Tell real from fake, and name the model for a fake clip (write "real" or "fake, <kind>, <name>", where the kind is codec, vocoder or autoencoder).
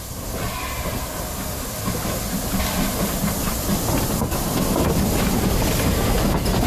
real